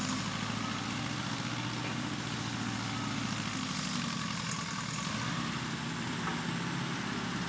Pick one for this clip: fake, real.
real